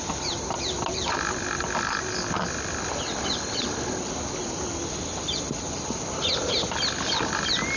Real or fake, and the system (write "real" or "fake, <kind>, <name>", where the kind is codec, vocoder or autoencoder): real